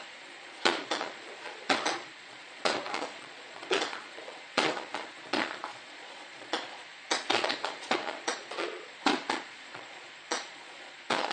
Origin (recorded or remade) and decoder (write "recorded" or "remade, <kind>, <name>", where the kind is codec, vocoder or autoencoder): remade, vocoder, Vocos